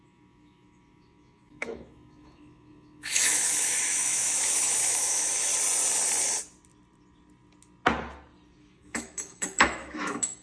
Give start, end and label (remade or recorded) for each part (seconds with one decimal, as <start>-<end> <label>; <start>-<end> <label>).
0.0-5.5 remade; 5.5-8.6 recorded; 8.6-10.4 remade